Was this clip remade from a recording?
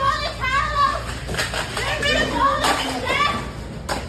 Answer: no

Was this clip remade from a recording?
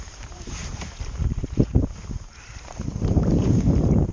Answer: yes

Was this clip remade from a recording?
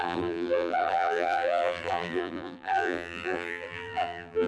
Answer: yes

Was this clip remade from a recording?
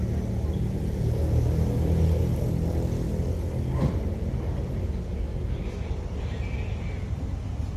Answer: no